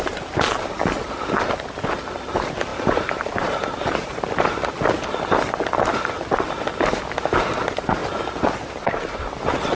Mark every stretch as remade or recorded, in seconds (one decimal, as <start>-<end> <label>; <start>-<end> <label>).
0.0-2.7 recorded; 2.7-4.7 remade; 4.7-9.7 recorded